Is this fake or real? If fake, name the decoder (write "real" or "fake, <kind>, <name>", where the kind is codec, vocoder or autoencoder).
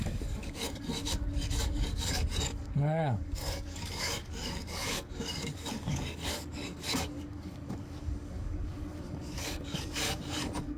fake, codec, DAC